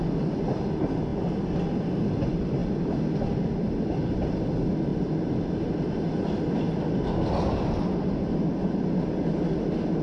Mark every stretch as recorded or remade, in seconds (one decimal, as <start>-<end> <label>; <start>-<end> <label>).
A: 0.0-10.0 recorded